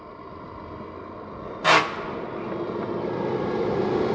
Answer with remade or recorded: recorded